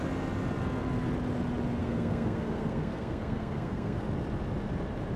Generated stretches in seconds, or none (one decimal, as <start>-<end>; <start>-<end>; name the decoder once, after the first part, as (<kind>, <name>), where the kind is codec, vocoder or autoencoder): 1.8-4.0 (codec, SNAC)